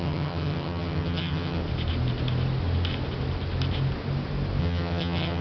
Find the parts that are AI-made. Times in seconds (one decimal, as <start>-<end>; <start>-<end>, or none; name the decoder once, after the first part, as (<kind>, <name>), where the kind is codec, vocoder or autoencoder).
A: 0.0-1.6 (vocoder, HiFi-GAN); 4.6-5.4